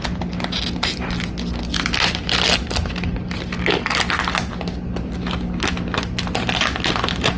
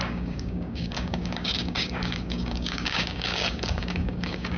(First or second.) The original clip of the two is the first